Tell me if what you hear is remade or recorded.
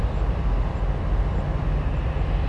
recorded